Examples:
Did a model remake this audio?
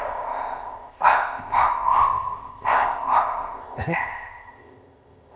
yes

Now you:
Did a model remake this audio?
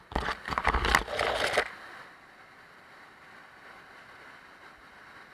no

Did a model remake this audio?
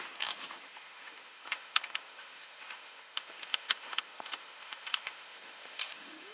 yes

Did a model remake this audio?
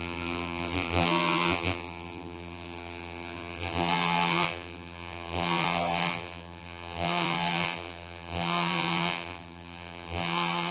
yes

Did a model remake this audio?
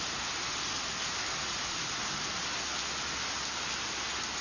no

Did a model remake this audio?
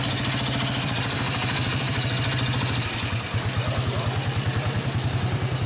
yes